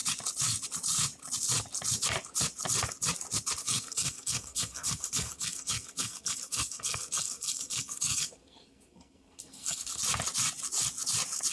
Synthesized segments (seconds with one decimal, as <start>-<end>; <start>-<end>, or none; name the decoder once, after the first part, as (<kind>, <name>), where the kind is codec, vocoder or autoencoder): 3.6-10.0 (codec, SNAC)